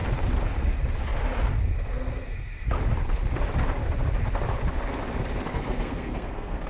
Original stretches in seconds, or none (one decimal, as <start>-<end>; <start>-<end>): 0.0-5.5